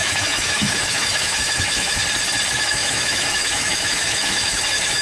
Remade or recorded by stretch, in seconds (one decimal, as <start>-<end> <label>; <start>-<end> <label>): 0.0-2.0 remade; 2.0-2.5 recorded; 2.5-5.0 remade